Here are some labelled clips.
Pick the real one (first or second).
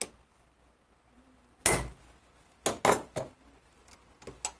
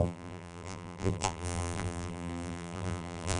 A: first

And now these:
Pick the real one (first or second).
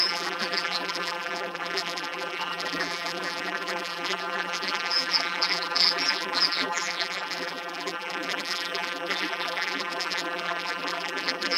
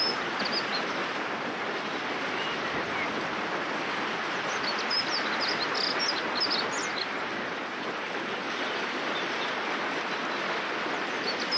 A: second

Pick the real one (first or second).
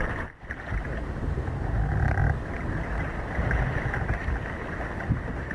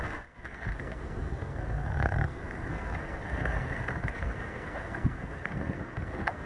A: first